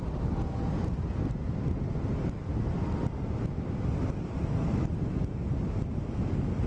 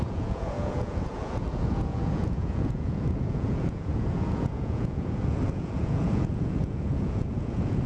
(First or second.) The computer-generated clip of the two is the second